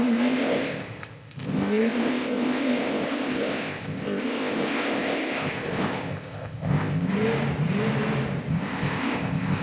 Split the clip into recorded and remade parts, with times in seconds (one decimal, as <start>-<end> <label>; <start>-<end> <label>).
0.0-7.1 remade; 7.1-8.5 recorded; 8.5-9.6 remade